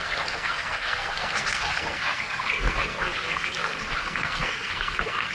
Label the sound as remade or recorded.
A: remade